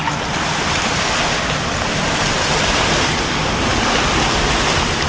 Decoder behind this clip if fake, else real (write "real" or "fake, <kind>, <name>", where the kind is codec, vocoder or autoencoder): real